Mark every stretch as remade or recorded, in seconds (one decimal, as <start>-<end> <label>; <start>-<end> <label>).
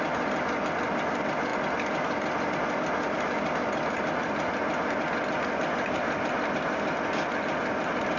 0.0-8.2 recorded